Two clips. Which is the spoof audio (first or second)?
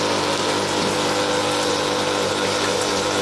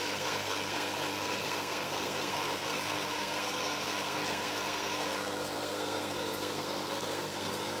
second